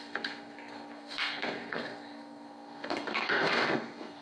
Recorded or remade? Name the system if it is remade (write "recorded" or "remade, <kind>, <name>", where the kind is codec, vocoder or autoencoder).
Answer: remade, codec, SNAC